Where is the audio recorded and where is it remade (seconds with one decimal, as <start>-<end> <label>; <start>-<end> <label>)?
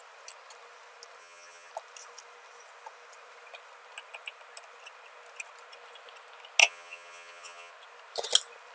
0.0-1.2 recorded; 1.2-1.7 remade; 1.7-6.6 recorded; 6.6-7.7 remade; 7.7-8.7 recorded